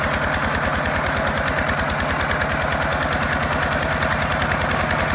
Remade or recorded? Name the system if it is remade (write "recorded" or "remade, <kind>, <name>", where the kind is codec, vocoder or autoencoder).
recorded